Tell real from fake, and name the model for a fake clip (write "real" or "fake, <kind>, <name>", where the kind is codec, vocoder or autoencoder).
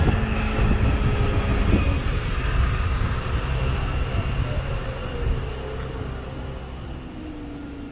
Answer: real